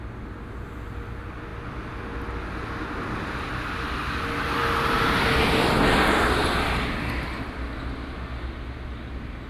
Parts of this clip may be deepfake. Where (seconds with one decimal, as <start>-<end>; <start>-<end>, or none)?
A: none